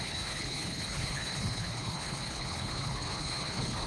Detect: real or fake fake